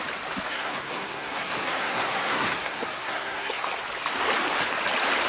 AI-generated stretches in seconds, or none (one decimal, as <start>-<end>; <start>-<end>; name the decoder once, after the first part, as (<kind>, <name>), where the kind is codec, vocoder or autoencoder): 0.5-3.7 (codec, SNAC)